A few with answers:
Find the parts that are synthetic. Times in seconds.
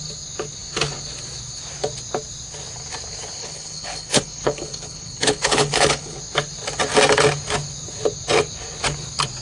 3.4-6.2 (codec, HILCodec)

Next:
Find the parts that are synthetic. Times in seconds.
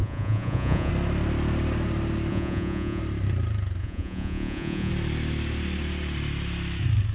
0.0-0.9 (vocoder, Vocos); 2.3-3.0; 3.8-4.9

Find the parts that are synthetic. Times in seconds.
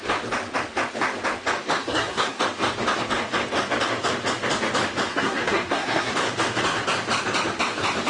1.8-2.4 (codec, SNAC); 5.1-6.1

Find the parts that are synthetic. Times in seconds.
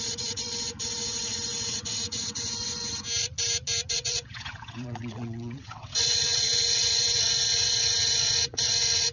0.0-2.9 (vocoder, WaveNeXt); 3.9-9.1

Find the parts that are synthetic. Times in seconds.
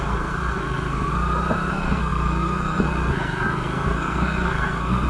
0.0-1.1 (codec, SNAC); 1.7-5.1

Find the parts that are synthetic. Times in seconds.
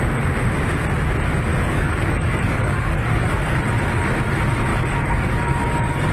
1.5-3.6 (codec, DAC); 4.7-6.1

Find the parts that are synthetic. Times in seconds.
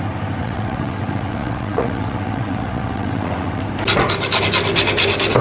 0.4-3.6 (vocoder, WaveNeXt)